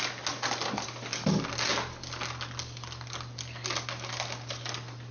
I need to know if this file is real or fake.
real